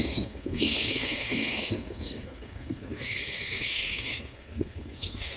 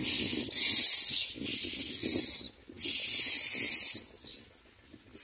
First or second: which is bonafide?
second